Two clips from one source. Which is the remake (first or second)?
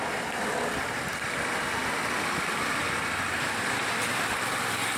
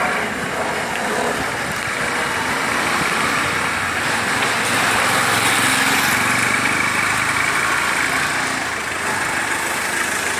first